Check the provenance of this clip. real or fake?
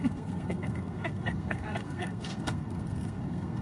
fake